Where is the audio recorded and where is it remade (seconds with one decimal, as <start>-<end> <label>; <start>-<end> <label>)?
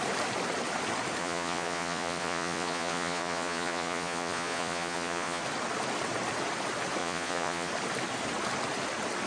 0.0-1.2 recorded; 1.2-5.4 remade; 5.4-7.0 recorded; 7.0-7.7 remade; 7.7-9.3 recorded